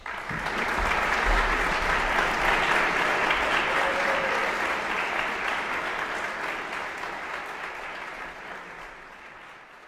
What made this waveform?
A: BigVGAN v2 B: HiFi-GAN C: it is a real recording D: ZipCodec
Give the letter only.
C